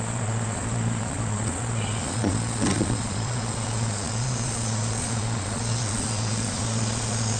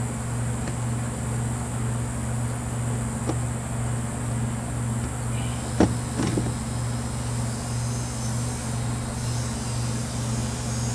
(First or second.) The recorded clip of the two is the second